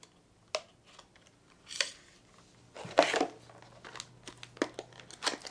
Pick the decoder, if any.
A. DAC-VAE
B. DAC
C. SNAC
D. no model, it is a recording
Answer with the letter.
D